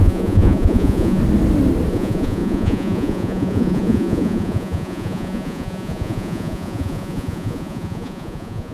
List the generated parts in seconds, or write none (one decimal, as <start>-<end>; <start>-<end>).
0.0-1.2; 1.9-8.7